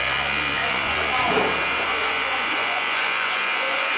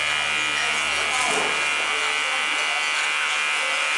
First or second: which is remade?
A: first